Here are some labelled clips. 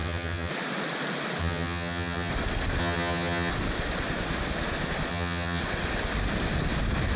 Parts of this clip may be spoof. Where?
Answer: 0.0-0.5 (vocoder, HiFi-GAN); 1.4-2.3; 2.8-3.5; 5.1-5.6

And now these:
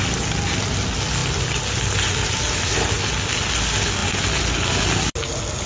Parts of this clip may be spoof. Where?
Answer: none

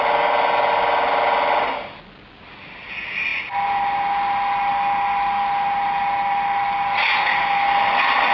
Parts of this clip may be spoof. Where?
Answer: none